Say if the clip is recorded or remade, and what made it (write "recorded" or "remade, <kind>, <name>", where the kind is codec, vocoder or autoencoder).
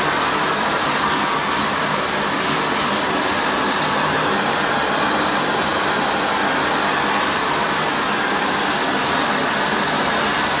recorded